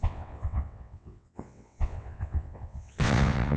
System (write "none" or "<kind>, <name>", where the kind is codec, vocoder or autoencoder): vocoder, WaveNeXt